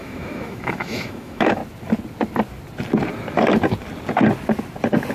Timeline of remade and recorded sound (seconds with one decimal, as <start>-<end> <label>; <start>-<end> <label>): 0.0-1.6 remade; 1.6-5.1 recorded